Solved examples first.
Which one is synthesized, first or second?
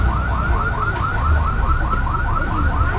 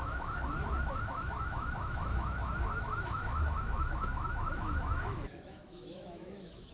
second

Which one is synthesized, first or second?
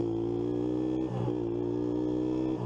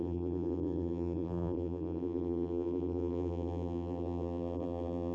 second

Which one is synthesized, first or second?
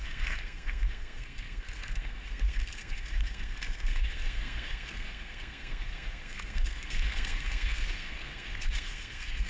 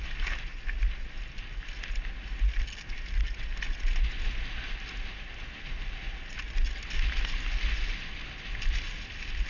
first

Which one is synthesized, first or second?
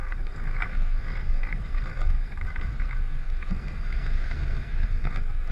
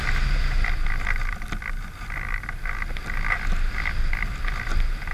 first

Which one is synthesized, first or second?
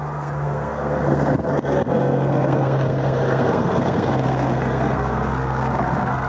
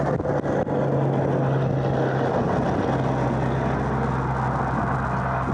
first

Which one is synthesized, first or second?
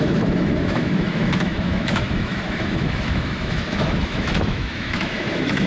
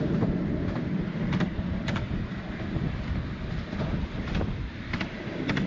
first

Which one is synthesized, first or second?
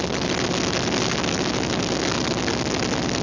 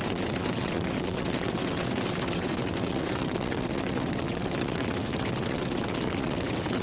second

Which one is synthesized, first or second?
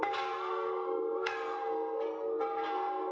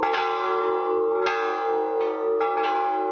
first